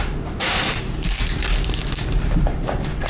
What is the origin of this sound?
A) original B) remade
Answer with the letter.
A